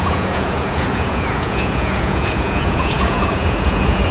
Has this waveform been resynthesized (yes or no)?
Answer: yes